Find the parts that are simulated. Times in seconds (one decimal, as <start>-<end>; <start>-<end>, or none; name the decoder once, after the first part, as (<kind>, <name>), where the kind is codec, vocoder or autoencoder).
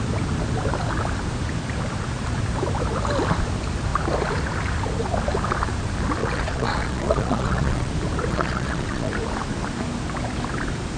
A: 6.2-7.9 (vocoder, Vocos); 8.3-9.1